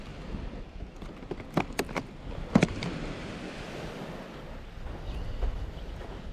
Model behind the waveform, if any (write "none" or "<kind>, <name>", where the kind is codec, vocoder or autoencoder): none